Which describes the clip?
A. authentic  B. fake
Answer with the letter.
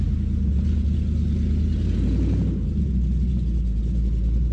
A